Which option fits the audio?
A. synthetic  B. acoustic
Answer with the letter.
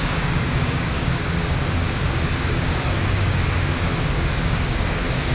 A